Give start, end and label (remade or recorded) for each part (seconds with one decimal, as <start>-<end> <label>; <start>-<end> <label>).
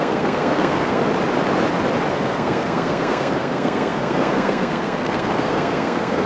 0.0-1.0 remade; 1.0-2.1 recorded; 2.1-6.3 remade